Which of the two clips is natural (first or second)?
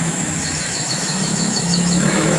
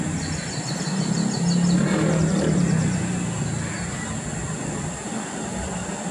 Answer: second